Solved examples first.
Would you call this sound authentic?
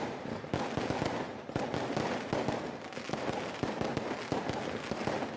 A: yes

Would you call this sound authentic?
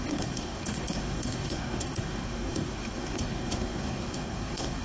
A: no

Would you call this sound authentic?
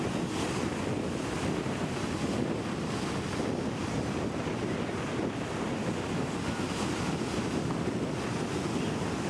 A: yes